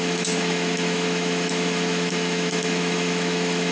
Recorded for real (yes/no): no